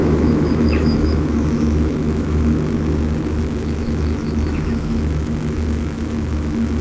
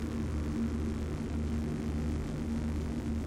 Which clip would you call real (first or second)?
second